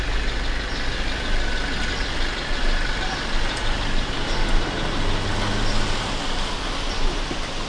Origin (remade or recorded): recorded